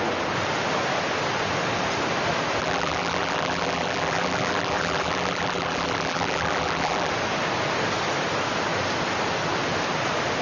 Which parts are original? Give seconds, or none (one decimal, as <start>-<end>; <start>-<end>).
0.0-2.6; 7.1-10.4